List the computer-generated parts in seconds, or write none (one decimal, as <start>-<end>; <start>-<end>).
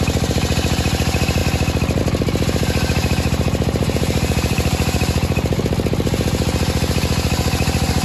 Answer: 3.0-5.6